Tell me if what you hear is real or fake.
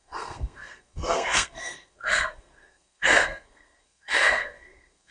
fake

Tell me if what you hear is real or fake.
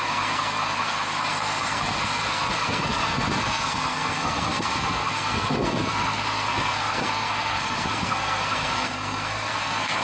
fake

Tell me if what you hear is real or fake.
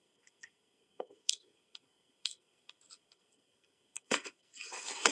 fake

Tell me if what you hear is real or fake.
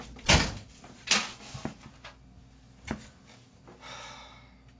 real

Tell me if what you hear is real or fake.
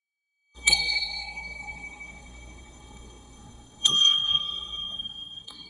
fake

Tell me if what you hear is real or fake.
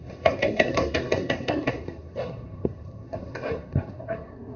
fake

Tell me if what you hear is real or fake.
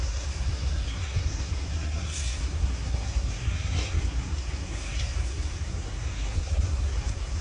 fake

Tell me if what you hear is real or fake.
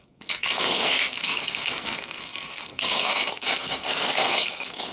fake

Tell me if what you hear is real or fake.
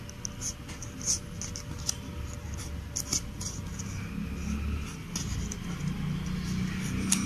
real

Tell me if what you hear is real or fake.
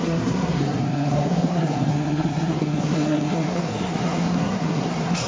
fake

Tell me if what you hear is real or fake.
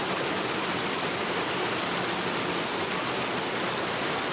real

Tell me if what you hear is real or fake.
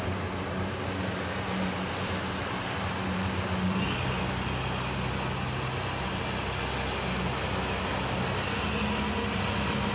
real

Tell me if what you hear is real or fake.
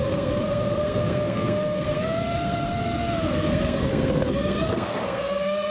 fake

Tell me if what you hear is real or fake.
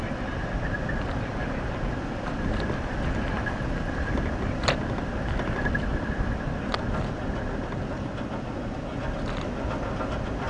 real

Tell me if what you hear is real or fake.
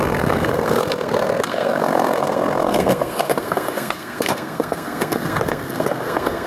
fake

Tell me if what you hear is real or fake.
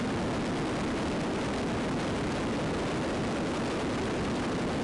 real